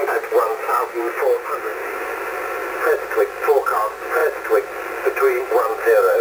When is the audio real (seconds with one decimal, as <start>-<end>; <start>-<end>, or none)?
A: 0.0-6.2